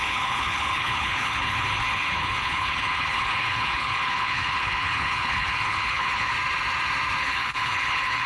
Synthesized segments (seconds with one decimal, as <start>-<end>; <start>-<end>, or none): 0.0-6.3; 7.2-8.3